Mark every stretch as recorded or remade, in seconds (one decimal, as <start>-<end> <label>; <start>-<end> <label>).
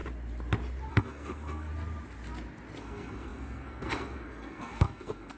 0.0-0.9 recorded; 0.9-1.7 remade; 1.7-2.8 recorded; 2.8-5.4 remade